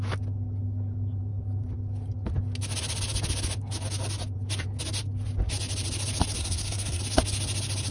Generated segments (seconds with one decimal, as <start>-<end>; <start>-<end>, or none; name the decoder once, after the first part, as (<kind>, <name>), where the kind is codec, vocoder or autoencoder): 6.4-7.0 (codec, SNAC)